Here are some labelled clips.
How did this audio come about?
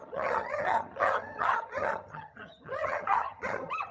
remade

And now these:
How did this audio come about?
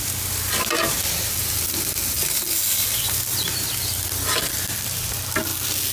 recorded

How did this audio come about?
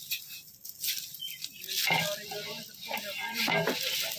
recorded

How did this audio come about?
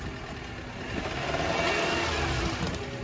recorded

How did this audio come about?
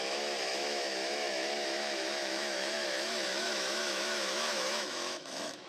remade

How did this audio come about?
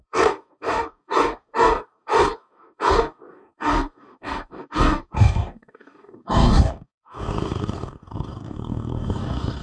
remade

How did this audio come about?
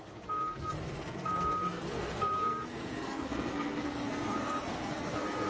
remade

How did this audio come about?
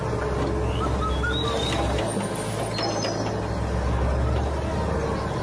recorded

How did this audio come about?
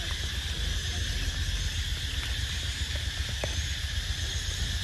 recorded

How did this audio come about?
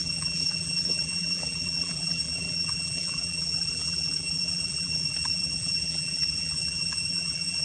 remade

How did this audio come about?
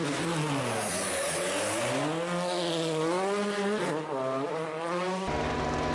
recorded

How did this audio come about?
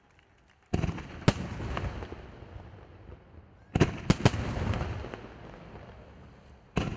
recorded